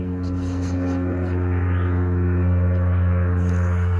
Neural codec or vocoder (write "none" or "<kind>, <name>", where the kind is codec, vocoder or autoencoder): codec, SNAC